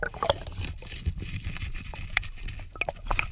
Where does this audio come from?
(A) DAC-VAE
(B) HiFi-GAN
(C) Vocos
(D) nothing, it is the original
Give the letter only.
D